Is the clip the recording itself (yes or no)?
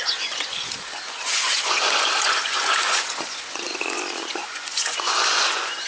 no